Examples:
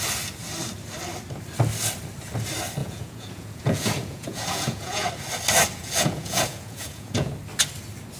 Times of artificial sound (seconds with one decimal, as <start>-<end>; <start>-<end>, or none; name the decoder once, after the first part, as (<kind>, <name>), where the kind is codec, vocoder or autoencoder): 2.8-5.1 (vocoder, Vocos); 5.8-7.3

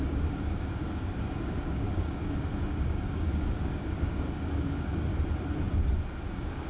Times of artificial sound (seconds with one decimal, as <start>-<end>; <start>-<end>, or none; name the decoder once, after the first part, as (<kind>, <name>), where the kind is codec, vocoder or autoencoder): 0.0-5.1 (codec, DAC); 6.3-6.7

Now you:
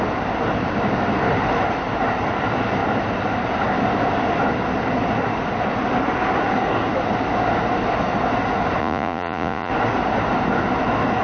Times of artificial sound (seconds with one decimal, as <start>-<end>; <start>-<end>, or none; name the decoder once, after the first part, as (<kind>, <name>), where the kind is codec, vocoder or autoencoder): 8.8-9.7 (vocoder, Vocos)

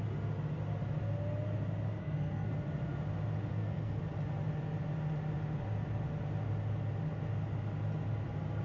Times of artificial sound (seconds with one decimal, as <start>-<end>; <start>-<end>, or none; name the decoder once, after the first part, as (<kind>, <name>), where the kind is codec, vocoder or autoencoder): 2.0-2.5 (codec, SNAC); 3.5-4.0

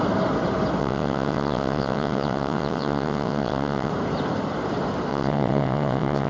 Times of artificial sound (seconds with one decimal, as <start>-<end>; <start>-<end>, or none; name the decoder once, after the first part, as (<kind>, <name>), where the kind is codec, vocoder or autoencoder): 0.8-3.9 (vocoder, WaveNeXt); 5.1-6.3

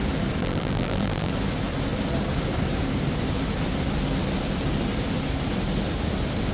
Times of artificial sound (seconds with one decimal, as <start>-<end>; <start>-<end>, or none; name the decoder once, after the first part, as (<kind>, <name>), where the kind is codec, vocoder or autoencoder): 0.4-1.3 (vocoder, BigVGAN v2)